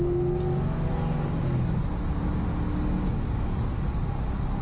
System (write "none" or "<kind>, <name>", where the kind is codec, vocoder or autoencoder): none